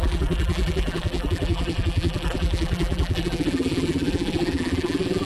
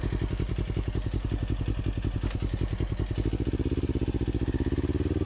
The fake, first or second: first